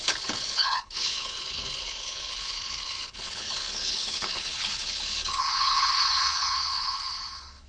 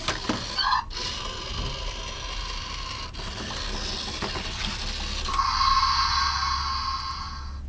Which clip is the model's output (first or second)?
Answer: first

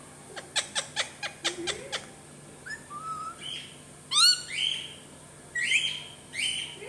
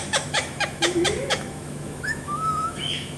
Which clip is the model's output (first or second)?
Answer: second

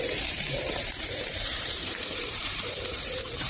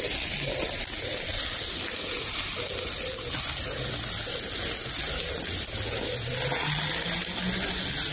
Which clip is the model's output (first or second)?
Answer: first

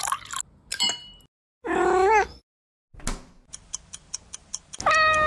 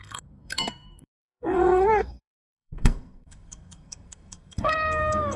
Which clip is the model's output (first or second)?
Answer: second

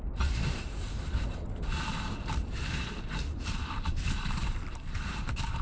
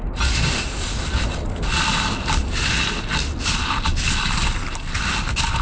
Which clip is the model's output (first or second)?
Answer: first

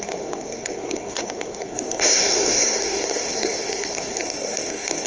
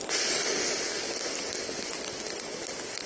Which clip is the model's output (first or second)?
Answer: first